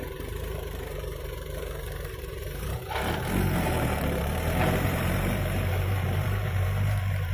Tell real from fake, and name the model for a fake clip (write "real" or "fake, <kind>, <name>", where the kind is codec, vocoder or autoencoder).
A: fake, vocoder, BigVGAN v2